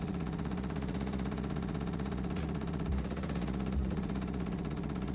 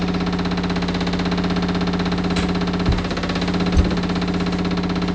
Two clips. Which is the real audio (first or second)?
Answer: second